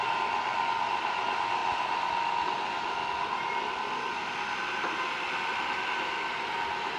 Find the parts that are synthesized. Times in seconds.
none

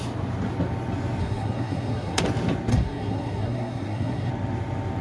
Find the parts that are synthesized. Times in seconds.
1.2-2.2 (codec, SNAC); 2.7-4.3

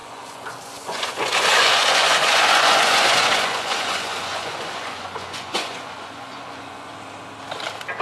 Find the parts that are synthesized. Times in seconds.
0.0-6.9 (vocoder, Vocos)

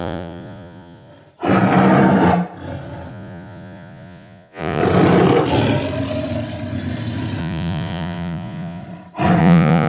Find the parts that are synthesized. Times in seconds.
0.0-1.1 (vocoder, Vocos); 3.1-4.8; 7.4-8.8; 9.4-9.9

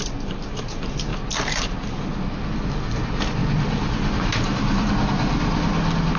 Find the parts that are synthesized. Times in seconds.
3.4-4.9 (vocoder, BigVGAN v2)